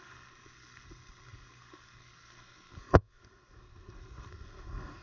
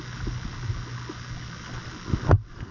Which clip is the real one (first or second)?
second